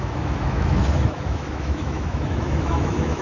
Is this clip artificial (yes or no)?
yes